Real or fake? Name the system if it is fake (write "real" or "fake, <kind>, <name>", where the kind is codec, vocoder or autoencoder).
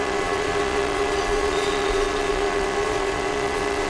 fake, vocoder, Vocos